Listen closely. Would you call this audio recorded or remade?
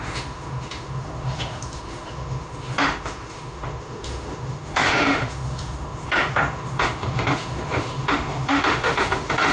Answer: remade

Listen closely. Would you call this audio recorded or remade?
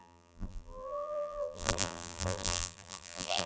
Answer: remade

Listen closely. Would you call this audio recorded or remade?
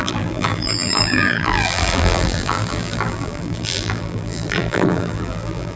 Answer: remade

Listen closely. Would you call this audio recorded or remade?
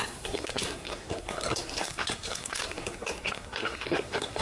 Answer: remade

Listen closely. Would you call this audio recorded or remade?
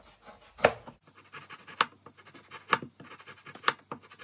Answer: recorded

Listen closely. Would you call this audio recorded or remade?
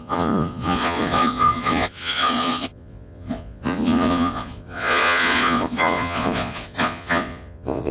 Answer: remade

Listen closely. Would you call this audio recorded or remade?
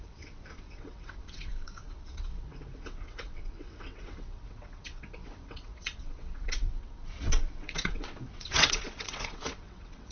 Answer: remade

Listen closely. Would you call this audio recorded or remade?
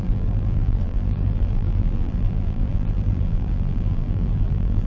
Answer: remade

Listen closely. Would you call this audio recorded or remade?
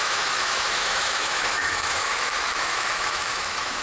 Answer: remade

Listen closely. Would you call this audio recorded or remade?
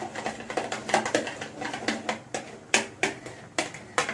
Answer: recorded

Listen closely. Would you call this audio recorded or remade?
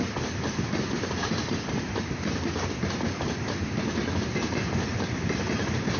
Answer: remade